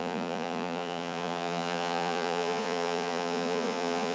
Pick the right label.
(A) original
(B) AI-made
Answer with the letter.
B